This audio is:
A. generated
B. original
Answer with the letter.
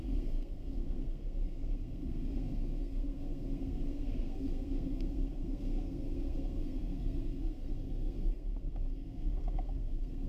A